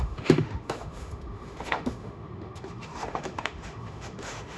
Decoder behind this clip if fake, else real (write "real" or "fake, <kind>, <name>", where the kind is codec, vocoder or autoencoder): fake, autoencoder, DAC-VAE